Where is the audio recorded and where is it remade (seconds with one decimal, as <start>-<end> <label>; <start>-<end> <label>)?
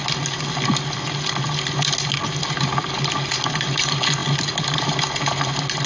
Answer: 0.0-5.9 recorded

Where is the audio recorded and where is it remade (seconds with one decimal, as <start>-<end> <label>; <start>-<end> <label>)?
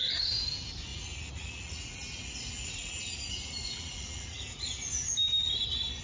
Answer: 0.0-0.9 recorded; 0.9-4.4 remade; 4.4-6.0 recorded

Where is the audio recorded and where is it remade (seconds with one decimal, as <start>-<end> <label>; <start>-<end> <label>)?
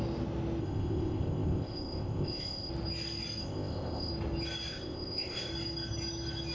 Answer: 0.0-0.6 recorded; 0.6-2.7 remade; 2.7-3.4 recorded; 3.4-4.1 remade; 4.1-4.7 recorded; 4.7-5.5 remade; 5.5-6.5 recorded